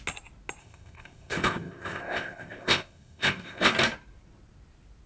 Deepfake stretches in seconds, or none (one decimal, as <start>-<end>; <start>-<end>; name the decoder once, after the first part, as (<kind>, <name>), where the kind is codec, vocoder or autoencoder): 0.6-3.7 (codec, ZipCodec)